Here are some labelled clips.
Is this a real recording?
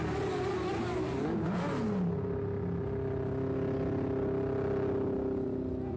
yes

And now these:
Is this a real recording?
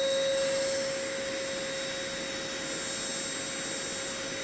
yes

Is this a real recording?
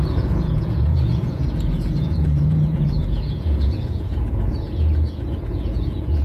no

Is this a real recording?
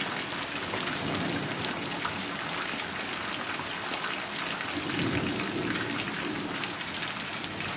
yes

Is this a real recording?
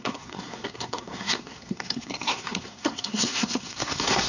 no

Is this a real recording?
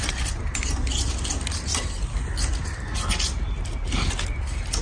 yes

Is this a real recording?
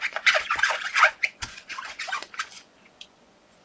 no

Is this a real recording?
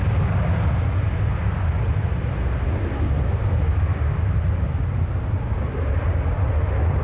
yes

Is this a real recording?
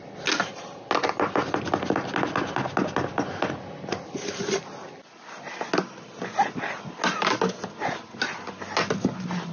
yes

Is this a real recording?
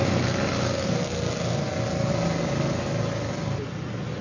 yes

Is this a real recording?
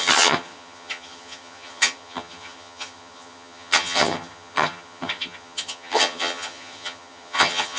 no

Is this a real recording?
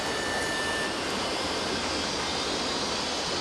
yes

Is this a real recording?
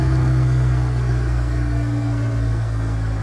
no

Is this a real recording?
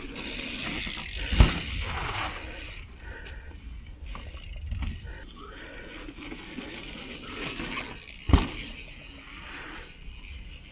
yes